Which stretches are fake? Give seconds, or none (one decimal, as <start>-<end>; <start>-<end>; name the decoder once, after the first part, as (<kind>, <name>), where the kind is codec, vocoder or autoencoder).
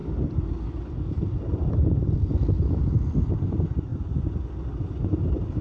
3.9-5.6 (vocoder, BigVGAN v2)